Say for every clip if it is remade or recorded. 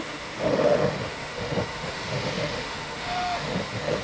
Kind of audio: remade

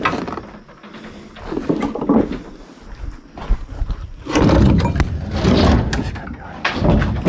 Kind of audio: recorded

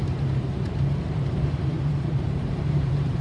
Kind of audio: remade